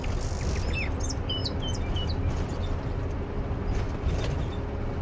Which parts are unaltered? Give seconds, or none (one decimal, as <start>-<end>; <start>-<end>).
0.0-5.0